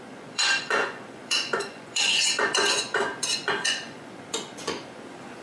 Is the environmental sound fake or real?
fake